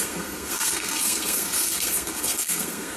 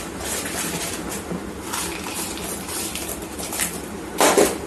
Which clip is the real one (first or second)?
second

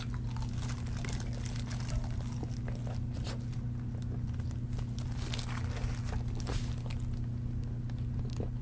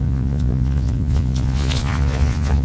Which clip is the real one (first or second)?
first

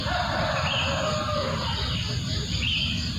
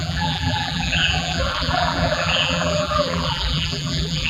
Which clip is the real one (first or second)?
first